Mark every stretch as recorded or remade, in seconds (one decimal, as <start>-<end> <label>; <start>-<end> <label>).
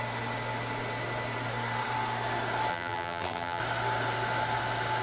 0.0-2.7 recorded; 2.7-3.6 remade; 3.6-5.0 recorded